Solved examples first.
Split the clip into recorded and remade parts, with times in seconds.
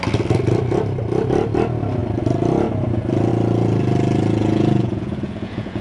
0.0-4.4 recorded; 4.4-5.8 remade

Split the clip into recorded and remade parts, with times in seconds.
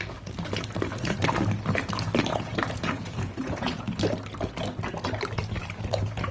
0.0-2.3 recorded; 2.3-4.0 remade; 4.0-6.3 recorded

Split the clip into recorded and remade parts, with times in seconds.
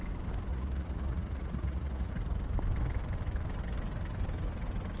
0.0-0.5 recorded; 0.5-2.1 remade; 2.1-5.0 recorded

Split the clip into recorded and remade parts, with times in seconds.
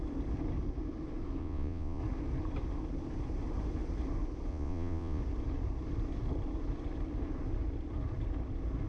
0.0-1.4 recorded; 1.4-2.0 remade; 2.0-4.5 recorded; 4.5-5.2 remade; 5.2-8.9 recorded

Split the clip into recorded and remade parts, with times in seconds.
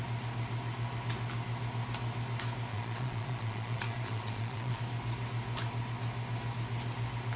0.0-2.7 recorded; 2.7-4.8 remade; 4.8-7.4 recorded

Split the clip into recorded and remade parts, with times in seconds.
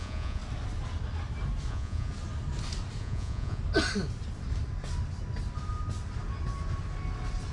0.0-0.4 remade; 0.4-1.7 recorded; 1.7-2.1 remade; 2.1-3.0 recorded; 3.0-3.6 remade; 3.6-7.5 recorded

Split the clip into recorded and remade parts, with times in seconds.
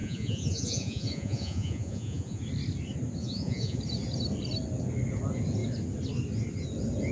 0.0-2.4 remade; 2.4-3.2 recorded; 3.2-3.8 remade; 3.8-7.1 recorded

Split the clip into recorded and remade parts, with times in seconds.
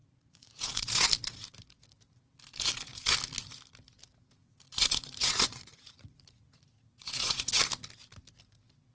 0.0-1.1 remade; 1.1-4.4 recorded; 4.4-7.6 remade; 7.6-8.9 recorded